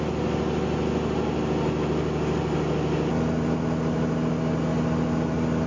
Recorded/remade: recorded